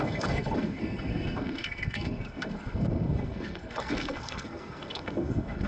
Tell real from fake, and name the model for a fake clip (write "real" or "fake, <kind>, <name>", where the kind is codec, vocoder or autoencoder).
fake, codec, SNAC